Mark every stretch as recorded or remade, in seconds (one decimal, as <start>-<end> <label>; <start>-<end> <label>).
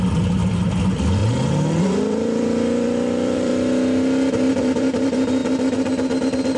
0.0-1.2 remade; 1.2-1.8 recorded; 1.8-3.5 remade; 3.5-4.5 recorded; 4.5-5.4 remade; 5.4-6.6 recorded